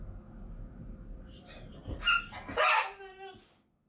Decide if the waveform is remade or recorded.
recorded